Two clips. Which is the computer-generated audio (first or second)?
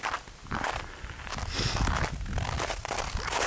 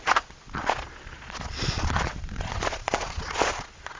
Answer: second